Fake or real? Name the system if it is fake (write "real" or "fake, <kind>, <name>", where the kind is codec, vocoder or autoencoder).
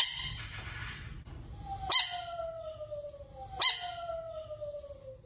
real